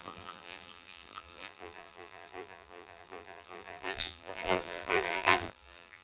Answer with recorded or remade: remade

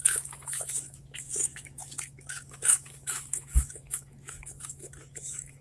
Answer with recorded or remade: remade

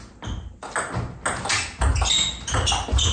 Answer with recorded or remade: recorded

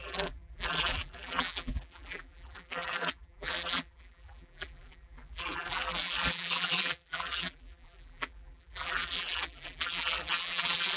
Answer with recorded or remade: remade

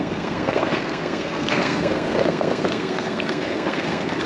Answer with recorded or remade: remade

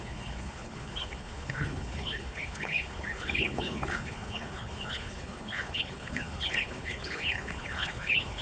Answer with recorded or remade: remade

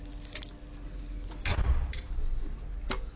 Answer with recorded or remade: recorded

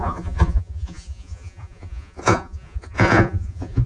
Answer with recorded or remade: remade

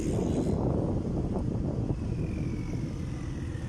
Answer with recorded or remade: recorded